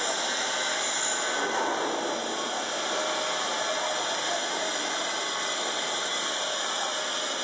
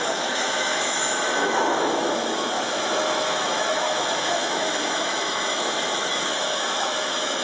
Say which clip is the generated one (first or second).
second